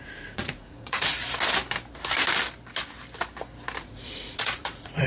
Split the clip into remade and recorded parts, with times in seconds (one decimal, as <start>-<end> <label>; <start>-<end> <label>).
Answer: 0.0-1.1 remade; 1.1-3.8 recorded; 3.8-5.1 remade